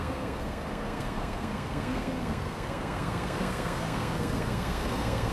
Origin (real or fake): fake